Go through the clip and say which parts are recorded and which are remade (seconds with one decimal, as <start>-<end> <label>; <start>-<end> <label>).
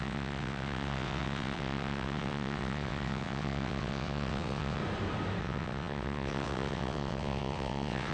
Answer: 0.0-4.8 remade; 4.8-5.4 recorded; 5.4-8.1 remade